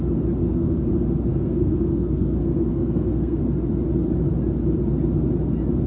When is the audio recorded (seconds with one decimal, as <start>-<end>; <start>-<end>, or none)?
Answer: 0.0-0.4; 0.9-1.3; 3.4-5.9